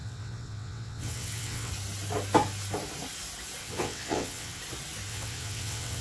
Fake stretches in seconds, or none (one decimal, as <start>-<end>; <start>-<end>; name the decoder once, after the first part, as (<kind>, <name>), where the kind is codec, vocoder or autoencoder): 0.0-1.7 (vocoder, WaveNeXt); 3.6-4.6; 5.1-6.0